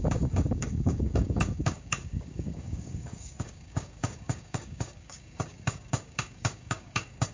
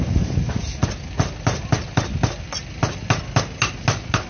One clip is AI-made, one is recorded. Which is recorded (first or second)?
second